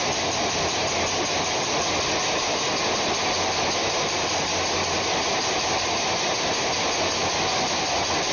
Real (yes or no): yes